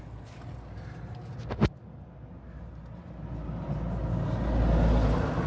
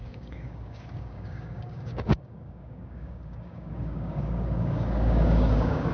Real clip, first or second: first